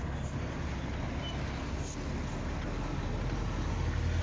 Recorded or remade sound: recorded